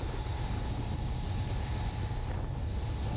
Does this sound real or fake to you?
real